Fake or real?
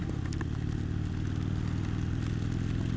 real